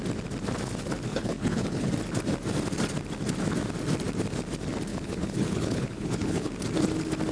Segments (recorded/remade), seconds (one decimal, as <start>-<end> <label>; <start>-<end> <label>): 0.0-1.1 recorded; 1.1-1.9 remade; 1.9-4.9 recorded; 4.9-6.5 remade; 6.5-7.3 recorded